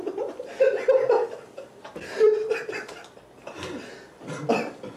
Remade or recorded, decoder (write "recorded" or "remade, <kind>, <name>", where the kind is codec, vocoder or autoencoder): remade, vocoder, BigVGAN v2